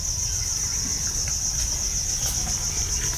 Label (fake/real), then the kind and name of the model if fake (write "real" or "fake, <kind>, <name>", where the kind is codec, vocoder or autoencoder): real